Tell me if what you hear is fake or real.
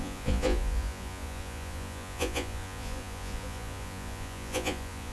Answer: fake